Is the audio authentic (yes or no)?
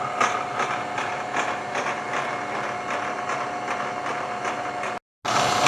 yes